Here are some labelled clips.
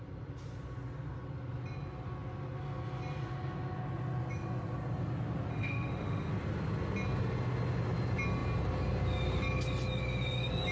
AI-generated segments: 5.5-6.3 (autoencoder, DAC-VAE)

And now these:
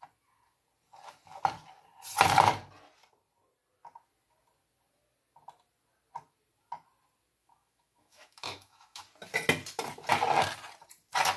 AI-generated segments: 7.4-9.0 (autoencoder, DAC-VAE)